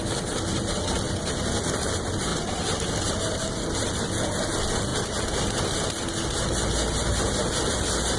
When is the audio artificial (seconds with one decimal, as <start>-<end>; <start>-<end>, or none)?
none